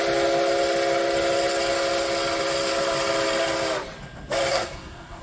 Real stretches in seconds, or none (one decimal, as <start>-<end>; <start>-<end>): 0.0-4.5